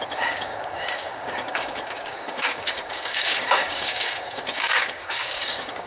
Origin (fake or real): fake